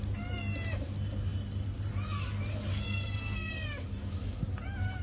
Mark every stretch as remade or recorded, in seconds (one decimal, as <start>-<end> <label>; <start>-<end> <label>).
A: 0.0-2.7 recorded; 2.7-3.5 remade; 3.5-5.0 recorded